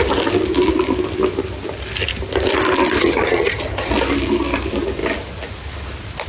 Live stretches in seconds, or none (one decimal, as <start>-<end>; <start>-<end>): 0.0-3.0; 3.9-6.3